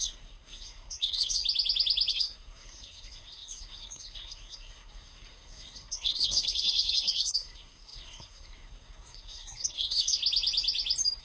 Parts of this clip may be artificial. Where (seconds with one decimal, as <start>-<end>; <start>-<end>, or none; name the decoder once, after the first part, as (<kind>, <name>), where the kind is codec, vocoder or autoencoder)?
0.0-1.4 (codec, SNAC); 2.1-10.2